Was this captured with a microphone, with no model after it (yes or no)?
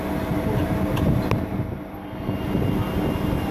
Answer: yes